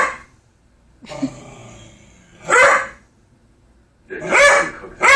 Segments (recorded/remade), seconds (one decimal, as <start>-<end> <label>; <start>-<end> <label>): 0.0-5.2 recorded